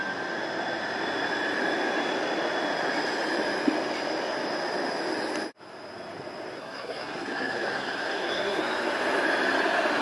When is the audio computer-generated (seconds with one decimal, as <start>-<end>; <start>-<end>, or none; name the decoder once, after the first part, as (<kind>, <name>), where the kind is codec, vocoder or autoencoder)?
6.6-8.6 (codec, SNAC)